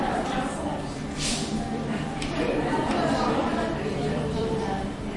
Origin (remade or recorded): remade